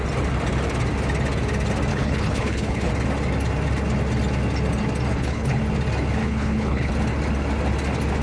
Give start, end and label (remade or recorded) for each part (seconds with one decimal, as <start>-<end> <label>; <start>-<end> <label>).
0.0-1.9 recorded; 1.9-2.9 remade; 2.9-5.1 recorded; 5.1-5.6 remade; 5.6-6.2 recorded; 6.2-6.9 remade; 6.9-8.2 recorded